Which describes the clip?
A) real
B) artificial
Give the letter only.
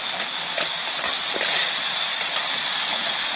A